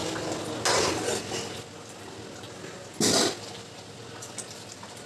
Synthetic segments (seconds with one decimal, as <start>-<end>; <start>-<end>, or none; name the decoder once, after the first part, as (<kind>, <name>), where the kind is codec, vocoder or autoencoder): none